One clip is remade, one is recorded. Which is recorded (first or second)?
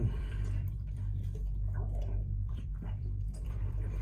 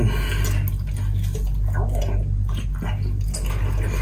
second